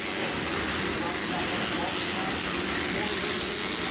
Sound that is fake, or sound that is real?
real